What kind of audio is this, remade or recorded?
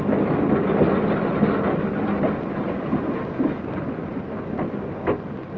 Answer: recorded